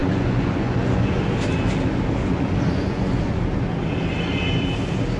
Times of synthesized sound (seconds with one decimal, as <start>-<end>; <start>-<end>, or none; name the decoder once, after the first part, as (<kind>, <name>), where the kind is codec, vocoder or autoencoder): 0.0-1.2 (vocoder, Vocos); 2.2-3.4